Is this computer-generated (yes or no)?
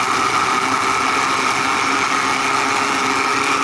no